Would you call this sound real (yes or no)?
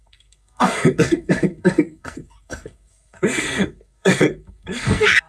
no